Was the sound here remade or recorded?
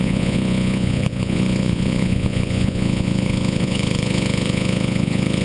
remade